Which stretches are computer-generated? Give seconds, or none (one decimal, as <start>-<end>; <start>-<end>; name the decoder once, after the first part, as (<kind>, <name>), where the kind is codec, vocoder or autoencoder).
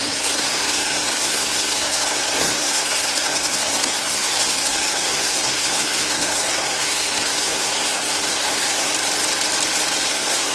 0.0-8.9 (codec, SNAC); 10.1-10.5